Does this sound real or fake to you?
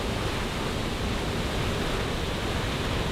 real